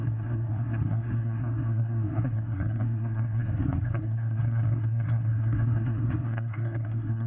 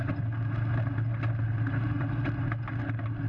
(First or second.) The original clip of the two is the second